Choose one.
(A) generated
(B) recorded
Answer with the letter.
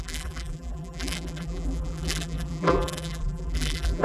A